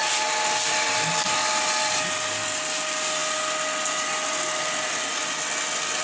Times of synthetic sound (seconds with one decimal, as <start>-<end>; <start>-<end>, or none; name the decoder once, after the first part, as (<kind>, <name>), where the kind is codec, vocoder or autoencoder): none